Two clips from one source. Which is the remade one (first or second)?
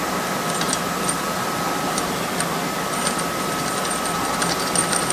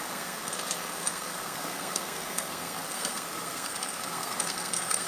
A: second